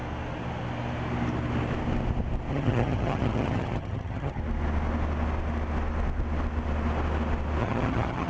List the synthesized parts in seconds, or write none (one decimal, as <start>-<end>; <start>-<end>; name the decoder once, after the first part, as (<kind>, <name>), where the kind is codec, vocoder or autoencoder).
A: 2.5-4.4 (vocoder, HiFi-GAN); 7.6-8.3

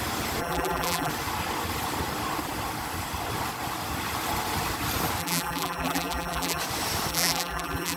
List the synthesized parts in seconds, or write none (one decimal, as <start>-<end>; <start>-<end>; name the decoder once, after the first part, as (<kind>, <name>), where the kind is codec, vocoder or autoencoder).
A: 0.4-1.1 (vocoder, BigVGAN v2); 5.2-6.6; 7.1-8.0

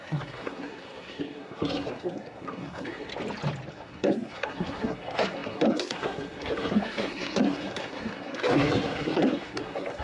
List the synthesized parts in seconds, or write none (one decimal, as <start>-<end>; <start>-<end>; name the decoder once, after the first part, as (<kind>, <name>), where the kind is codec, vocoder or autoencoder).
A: 0.0-3.1 (codec, SNAC); 3.7-10.0

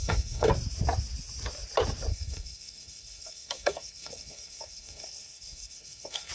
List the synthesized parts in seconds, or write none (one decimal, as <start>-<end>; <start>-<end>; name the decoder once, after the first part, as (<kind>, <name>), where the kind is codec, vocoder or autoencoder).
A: 0.0-0.5 (codec, SNAC); 2.1-6.3

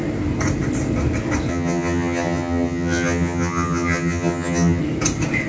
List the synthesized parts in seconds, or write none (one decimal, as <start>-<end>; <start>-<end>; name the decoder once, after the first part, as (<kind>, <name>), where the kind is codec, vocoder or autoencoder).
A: 1.5-4.8 (vocoder, HiFi-GAN)

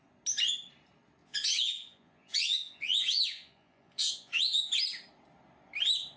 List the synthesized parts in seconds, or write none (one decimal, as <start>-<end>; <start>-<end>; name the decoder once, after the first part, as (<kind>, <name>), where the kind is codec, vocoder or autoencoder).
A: 1.2-4.7 (vocoder, Vocos)

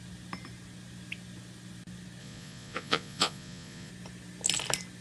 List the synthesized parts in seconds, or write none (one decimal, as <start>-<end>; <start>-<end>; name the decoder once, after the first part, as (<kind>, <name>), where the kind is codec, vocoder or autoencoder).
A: 2.2-3.9 (vocoder, Vocos)

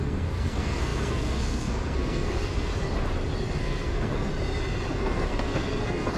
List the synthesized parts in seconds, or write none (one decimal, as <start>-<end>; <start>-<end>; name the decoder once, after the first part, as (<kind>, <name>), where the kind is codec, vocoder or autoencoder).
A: 0.0-2.7 (codec, SNAC); 3.6-4.3; 4.9-6.2